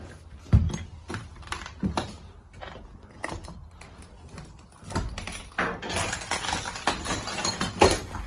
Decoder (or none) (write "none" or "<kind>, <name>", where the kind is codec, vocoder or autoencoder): none